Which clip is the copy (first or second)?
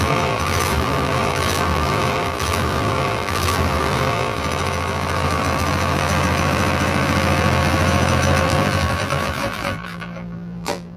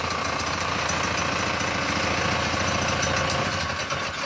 first